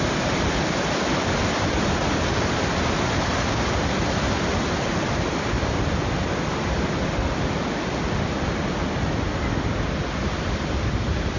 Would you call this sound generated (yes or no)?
no